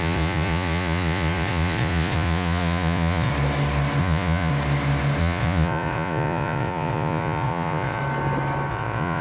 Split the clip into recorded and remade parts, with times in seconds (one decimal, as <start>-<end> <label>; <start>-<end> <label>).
0.0-3.3 remade; 3.3-4.0 recorded; 4.0-4.5 remade; 4.5-5.2 recorded; 5.2-8.0 remade; 8.0-8.7 recorded; 8.7-9.2 remade